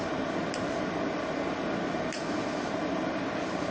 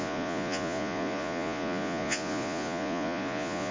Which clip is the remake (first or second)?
second